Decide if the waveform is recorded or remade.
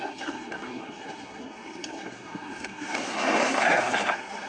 remade